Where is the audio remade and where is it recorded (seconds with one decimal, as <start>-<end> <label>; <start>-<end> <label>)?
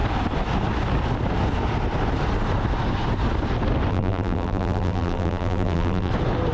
0.0-3.9 recorded; 3.9-6.1 remade; 6.1-6.5 recorded